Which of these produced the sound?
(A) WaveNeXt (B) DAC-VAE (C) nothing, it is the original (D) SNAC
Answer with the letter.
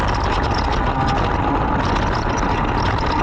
C